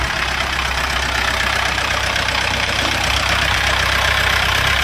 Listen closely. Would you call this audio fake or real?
fake